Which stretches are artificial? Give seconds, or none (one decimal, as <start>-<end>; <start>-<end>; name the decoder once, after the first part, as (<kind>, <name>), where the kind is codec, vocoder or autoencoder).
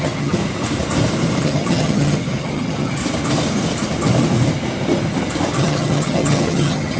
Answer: 0.0-0.4 (vocoder, HiFi-GAN); 1.4-3.0; 5.6-7.0